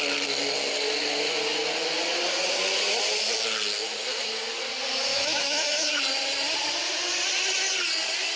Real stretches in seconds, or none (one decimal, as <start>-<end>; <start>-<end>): 0.0-5.1; 6.0-8.4